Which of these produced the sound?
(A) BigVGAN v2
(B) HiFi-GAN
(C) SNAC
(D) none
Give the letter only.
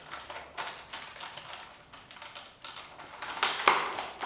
D